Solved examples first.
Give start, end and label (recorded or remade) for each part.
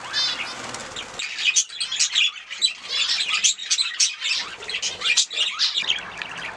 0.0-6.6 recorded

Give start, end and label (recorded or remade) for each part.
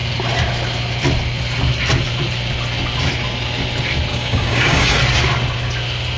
0.0-4.1 recorded; 4.1-5.0 remade; 5.0-6.2 recorded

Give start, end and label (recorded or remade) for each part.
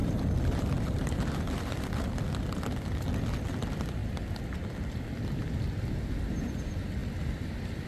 0.0-2.2 remade; 2.2-7.9 recorded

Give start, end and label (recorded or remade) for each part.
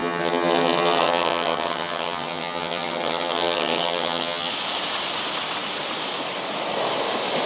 0.0-4.5 remade; 4.5-7.5 recorded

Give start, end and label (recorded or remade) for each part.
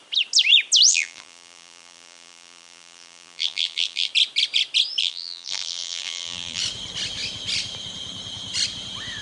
0.0-0.9 recorded; 0.9-4.1 remade; 4.1-5.0 recorded; 5.0-6.6 remade; 6.6-9.2 recorded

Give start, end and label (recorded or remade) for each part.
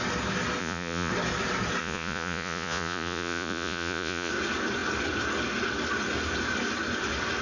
0.0-0.6 recorded; 0.6-1.1 remade; 1.1-1.8 recorded; 1.8-4.3 remade; 4.3-7.4 recorded